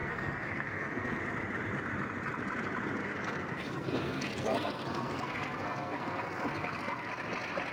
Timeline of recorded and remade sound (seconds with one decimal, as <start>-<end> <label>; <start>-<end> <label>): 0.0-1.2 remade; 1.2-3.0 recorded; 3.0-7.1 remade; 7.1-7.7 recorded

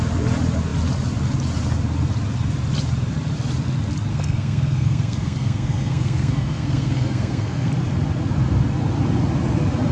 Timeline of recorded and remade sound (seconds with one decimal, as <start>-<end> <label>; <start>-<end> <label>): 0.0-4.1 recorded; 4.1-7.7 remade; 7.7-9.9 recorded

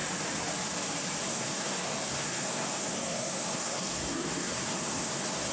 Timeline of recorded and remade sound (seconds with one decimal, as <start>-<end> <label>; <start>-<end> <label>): 0.0-1.2 recorded; 1.2-5.5 remade